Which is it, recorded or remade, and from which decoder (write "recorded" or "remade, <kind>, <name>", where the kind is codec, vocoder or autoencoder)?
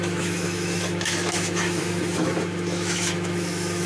remade, autoencoder, DAC-VAE